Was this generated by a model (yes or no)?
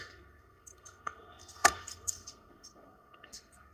yes